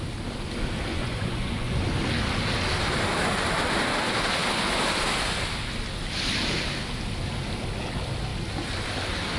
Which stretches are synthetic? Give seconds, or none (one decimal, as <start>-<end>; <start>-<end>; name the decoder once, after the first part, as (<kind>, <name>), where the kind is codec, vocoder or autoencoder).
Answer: 0.9-1.8 (vocoder, Vocos)